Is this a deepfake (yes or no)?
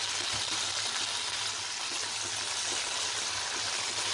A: no